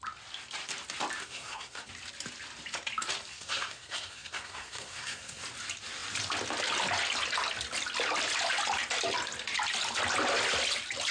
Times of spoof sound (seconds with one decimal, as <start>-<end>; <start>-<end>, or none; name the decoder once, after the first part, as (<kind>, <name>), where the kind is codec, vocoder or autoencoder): 1.2-1.9 (codec, SNAC); 3.3-5.4

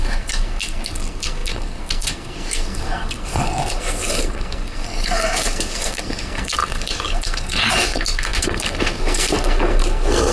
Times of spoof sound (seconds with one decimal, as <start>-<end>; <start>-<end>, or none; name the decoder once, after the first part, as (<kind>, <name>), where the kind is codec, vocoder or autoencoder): 0.0-10.3 (codec, SNAC)